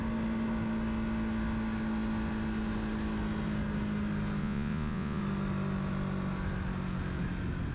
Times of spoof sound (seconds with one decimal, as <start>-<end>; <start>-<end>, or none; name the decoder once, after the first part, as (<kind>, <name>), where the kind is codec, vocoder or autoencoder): 4.4-5.2 (vocoder, Vocos)